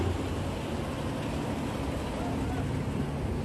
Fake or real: real